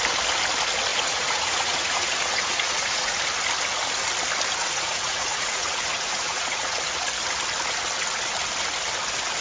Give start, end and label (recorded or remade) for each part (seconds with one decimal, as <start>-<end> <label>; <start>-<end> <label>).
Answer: 0.0-0.9 recorded; 0.9-3.2 remade; 3.2-4.6 recorded; 4.6-6.8 remade; 6.8-9.4 recorded